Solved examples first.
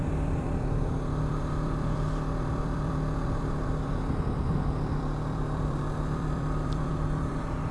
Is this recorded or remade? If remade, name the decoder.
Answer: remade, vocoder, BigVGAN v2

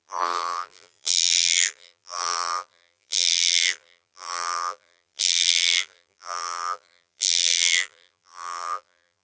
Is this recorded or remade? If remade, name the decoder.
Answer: remade, vocoder, BigVGAN v2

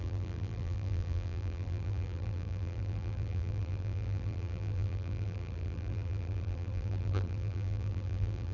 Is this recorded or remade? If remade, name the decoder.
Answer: remade, vocoder, BigVGAN v2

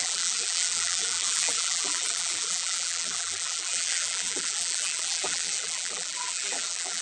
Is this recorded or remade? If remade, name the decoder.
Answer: remade, vocoder, BigVGAN v2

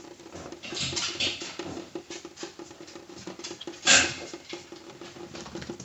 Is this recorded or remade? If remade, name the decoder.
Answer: remade, vocoder, BigVGAN v2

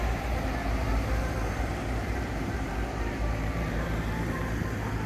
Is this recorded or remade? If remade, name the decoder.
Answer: remade, vocoder, BigVGAN v2